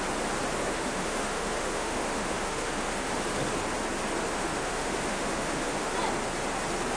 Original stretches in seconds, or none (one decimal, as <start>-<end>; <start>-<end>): 0.0-0.6; 3.1-4.3; 5.9-7.0